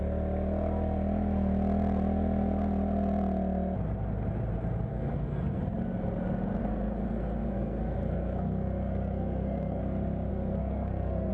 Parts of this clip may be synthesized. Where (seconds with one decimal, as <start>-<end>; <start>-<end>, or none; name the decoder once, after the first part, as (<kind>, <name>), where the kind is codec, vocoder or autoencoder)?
4.9-5.6 (codec, SNAC); 6.6-9.8; 10.3-11.3